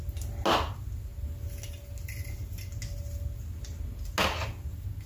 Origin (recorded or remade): recorded